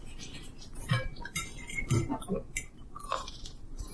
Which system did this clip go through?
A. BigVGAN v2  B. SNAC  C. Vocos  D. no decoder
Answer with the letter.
A